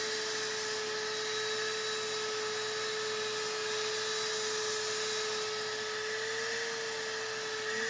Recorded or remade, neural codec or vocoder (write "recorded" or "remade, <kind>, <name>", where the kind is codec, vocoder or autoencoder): recorded